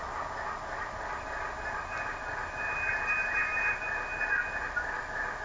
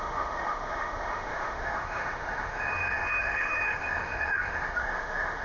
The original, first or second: first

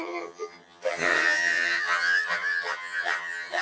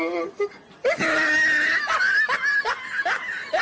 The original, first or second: second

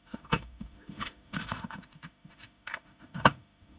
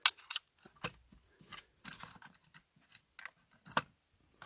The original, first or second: second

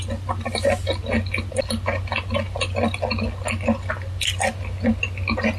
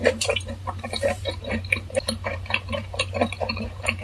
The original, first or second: first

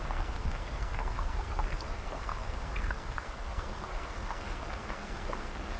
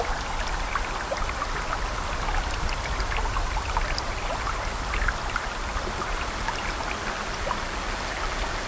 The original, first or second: second